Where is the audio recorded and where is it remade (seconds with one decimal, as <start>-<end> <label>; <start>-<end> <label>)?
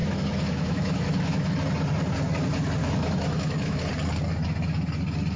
0.0-1.5 remade; 1.5-2.8 recorded; 2.8-3.9 remade; 3.9-5.4 recorded